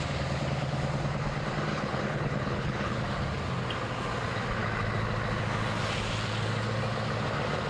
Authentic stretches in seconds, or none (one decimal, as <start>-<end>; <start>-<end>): 0.0-1.7; 3.0-7.7